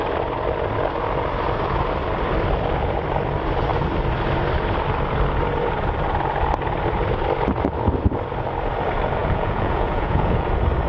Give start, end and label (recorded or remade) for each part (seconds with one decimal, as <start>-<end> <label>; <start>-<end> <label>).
0.0-9.2 recorded; 9.2-10.5 remade; 10.5-10.9 recorded